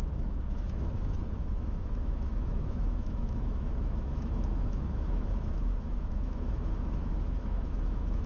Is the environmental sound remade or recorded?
remade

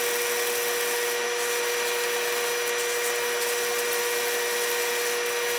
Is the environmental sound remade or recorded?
recorded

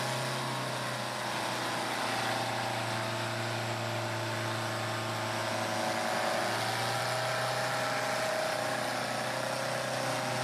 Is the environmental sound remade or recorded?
recorded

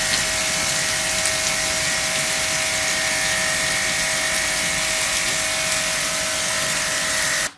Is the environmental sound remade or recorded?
recorded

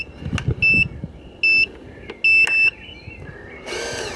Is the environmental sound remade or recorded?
recorded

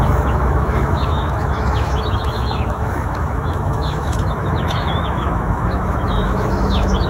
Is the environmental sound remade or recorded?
remade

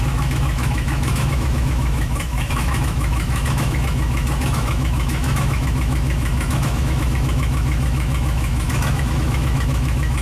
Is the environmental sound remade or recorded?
remade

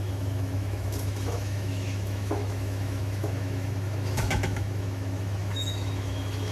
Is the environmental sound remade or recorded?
remade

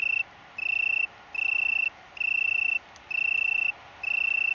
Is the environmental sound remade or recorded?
recorded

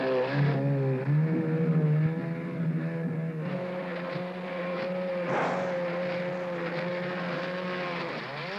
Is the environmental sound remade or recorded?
recorded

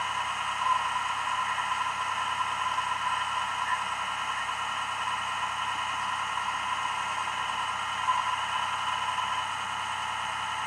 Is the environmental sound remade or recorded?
recorded